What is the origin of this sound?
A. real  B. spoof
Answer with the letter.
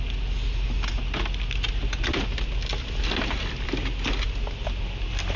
A